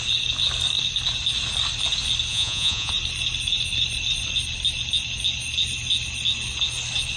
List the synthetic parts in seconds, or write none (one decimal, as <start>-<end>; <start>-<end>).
2.3-2.9